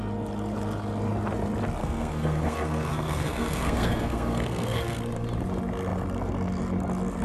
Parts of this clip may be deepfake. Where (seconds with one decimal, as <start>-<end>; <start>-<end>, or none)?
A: 1.8-5.0